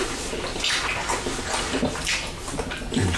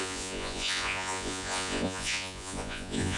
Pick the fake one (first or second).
second